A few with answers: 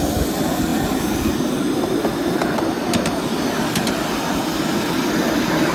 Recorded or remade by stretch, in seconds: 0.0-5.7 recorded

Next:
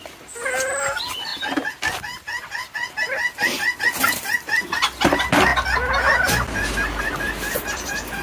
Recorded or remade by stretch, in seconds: 0.0-8.2 recorded

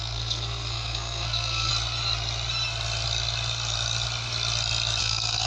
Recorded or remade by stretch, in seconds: 0.0-1.7 remade; 1.7-5.0 recorded; 5.0-5.5 remade

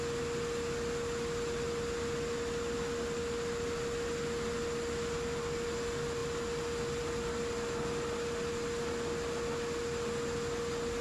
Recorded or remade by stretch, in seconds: 0.0-11.0 recorded

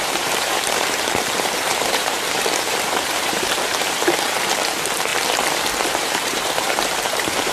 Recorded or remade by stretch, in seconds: 0.0-5.1 remade; 5.1-5.8 recorded; 5.8-7.5 remade

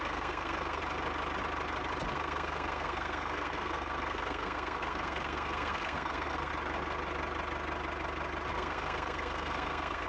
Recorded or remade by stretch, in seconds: 0.0-0.8 remade; 0.8-2.1 recorded; 2.1-6.5 remade; 6.5-8.5 recorded; 8.5-10.1 remade

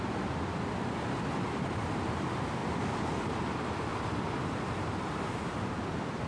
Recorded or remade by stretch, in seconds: 0.0-2.6 remade; 2.6-3.2 recorded; 3.2-6.3 remade

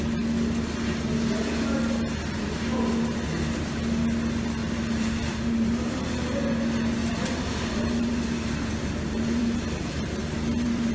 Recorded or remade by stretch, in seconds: 0.0-4.6 recorded; 4.6-6.1 remade; 6.1-7.0 recorded; 7.0-10.9 remade